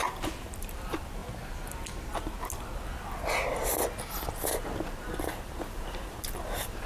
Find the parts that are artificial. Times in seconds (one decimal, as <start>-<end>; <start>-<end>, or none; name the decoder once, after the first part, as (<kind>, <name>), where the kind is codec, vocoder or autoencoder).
0.0-1.2 (vocoder, BigVGAN v2); 4.3-6.9

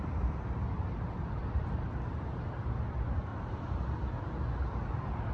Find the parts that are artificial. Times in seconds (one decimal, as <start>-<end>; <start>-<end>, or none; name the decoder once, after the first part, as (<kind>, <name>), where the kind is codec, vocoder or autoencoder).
1.4-2.0 (vocoder, BigVGAN v2); 3.3-4.2

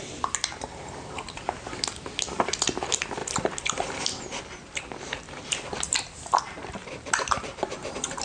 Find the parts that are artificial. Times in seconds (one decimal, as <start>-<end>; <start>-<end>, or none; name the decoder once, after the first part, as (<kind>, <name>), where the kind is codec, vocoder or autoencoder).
none

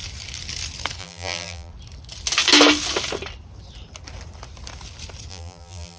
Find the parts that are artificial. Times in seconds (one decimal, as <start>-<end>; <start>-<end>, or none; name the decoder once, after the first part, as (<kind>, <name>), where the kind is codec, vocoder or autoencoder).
1.0-1.7 (vocoder, BigVGAN v2); 5.3-6.0

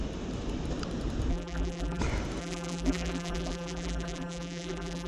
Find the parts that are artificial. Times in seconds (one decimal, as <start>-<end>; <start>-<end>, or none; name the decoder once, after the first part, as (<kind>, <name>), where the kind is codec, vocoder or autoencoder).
1.3-2.0 (vocoder, BigVGAN v2); 2.4-5.1